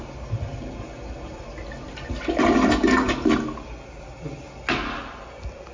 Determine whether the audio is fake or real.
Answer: real